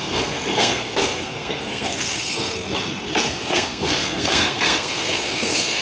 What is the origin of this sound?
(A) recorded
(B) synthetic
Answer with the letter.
B